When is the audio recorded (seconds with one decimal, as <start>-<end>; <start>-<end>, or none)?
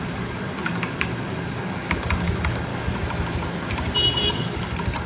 2.7-4.3